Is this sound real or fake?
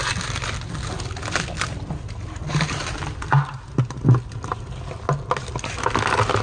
real